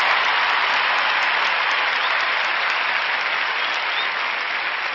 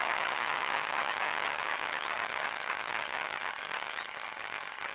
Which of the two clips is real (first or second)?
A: first